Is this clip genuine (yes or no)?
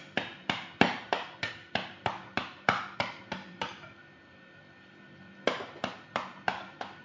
no